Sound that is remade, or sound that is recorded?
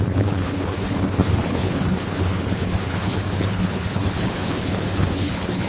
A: remade